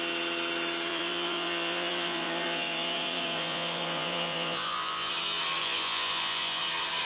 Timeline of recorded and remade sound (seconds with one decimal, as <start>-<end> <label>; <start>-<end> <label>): 0.0-0.9 recorded; 0.9-5.1 remade; 5.1-5.6 recorded; 5.6-6.6 remade; 6.6-7.0 recorded